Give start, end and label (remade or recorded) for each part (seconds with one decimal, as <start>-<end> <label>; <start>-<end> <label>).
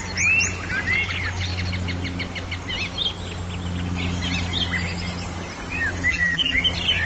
0.0-6.1 recorded; 6.1-6.6 remade; 6.6-7.1 recorded